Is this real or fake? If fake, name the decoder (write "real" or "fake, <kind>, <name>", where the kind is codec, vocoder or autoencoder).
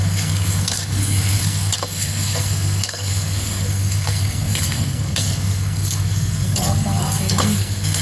fake, codec, SNAC